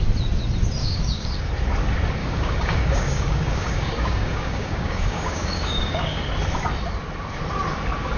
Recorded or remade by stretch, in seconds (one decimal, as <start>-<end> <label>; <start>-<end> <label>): 0.0-0.8 recorded; 0.8-1.5 remade; 1.5-2.2 recorded; 2.2-6.2 remade; 6.2-8.2 recorded